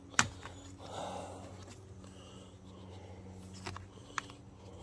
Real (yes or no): yes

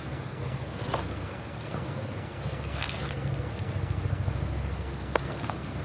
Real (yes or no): no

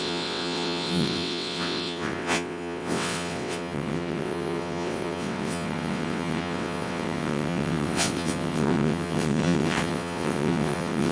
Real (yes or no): no